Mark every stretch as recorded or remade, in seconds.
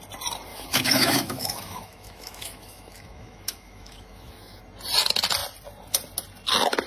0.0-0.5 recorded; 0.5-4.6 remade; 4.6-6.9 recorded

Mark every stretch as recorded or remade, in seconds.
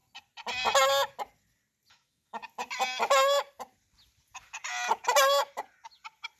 0.0-1.9 recorded; 1.9-2.4 remade; 2.4-6.4 recorded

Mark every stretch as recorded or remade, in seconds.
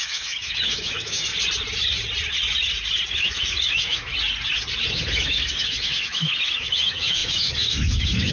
0.0-1.3 remade; 1.3-3.1 recorded; 3.1-4.1 remade; 4.1-4.9 recorded; 4.9-8.3 remade